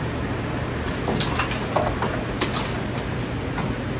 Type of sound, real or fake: real